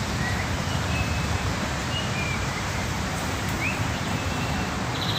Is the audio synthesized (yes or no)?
yes